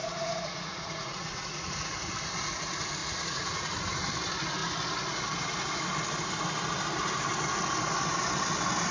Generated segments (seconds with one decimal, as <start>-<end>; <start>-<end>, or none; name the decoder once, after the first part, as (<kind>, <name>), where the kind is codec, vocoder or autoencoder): 0.0-2.1 (vocoder, Vocos); 3.0-3.8